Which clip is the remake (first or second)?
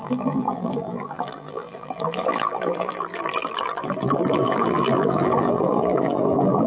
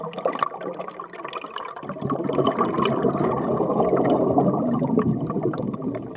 first